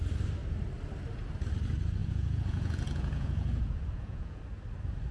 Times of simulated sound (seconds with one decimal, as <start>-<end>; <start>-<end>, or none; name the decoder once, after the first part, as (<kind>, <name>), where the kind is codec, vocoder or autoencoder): 2.0-4.4 (vocoder, Vocos)